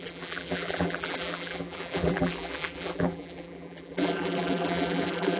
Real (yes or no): no